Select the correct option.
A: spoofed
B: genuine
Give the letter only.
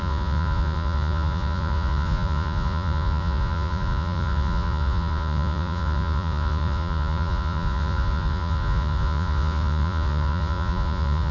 A